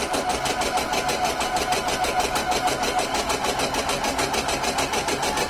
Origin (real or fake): real